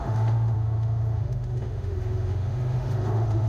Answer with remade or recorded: remade